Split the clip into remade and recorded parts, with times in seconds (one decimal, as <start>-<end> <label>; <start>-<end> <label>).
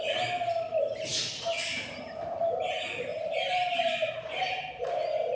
0.0-3.1 recorded; 3.1-4.4 remade; 4.4-5.3 recorded